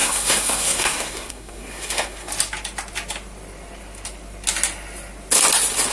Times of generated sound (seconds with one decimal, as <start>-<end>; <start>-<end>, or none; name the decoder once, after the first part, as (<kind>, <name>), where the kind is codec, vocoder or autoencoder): 0.0-2.3 (codec, SNAC)